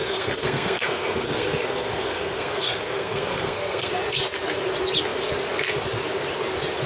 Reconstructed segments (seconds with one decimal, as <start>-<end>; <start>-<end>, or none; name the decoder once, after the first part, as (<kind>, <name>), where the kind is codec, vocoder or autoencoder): 0.0-3.9 (codec, SNAC)